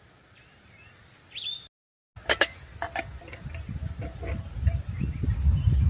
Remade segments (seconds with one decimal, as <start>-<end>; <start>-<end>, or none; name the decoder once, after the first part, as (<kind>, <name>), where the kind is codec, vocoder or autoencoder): none